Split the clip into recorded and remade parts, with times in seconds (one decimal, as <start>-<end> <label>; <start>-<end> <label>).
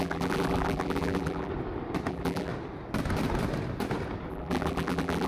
0.0-1.5 remade; 1.5-2.1 recorded; 2.1-2.5 remade; 2.5-4.3 recorded; 4.3-5.3 remade